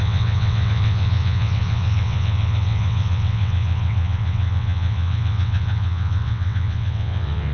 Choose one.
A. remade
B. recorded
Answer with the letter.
A